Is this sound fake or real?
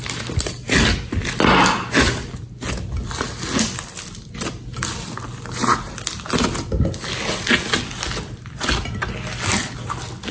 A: real